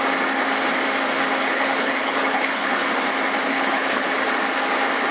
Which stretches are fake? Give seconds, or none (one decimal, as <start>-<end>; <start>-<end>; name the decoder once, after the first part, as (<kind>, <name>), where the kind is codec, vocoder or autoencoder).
1.4-2.9 (codec, HILCodec); 3.5-4.2